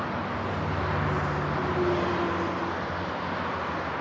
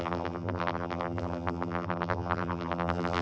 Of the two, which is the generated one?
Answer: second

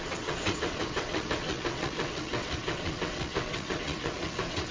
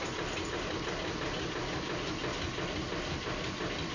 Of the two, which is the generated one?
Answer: first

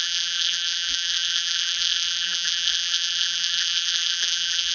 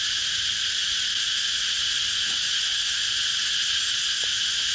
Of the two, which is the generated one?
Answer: first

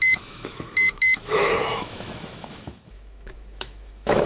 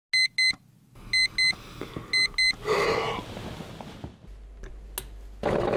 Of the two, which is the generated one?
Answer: first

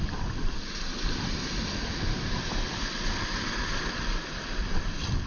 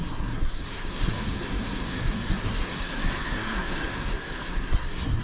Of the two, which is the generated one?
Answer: second